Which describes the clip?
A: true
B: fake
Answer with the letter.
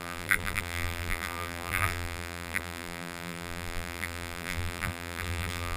B